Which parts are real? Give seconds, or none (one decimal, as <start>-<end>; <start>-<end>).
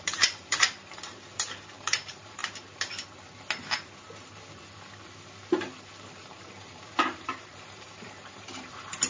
2.4-6.1